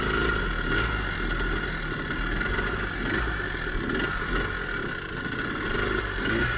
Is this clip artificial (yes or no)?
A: no